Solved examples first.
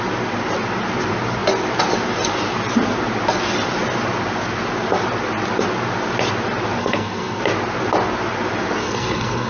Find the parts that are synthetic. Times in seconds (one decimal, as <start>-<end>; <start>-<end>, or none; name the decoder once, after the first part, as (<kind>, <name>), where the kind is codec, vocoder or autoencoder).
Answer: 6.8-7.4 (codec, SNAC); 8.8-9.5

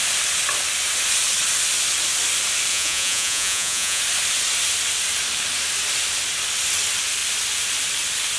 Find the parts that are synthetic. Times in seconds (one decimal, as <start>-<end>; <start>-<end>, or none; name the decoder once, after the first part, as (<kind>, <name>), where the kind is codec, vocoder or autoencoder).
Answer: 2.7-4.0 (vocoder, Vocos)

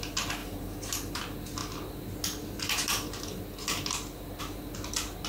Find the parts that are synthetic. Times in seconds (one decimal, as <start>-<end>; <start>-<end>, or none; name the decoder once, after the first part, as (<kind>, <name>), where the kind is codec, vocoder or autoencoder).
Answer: 0.4-1.2 (vocoder, BigVGAN v2)

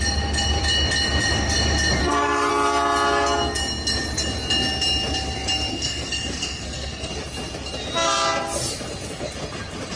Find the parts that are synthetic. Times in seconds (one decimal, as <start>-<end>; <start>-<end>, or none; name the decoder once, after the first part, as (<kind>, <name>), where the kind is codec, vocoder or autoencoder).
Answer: 2.0-2.5 (codec, SNAC); 5.7-7.1